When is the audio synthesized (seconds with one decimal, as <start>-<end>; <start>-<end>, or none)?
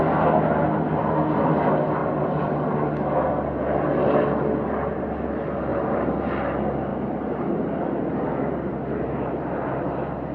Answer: 5.7-6.3; 6.9-9.9